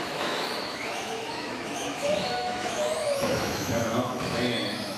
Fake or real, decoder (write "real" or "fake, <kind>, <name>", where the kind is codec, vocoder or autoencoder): fake, autoencoder, DAC-VAE